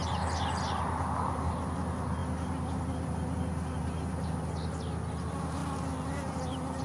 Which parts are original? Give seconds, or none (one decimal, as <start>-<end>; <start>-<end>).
0.0-6.8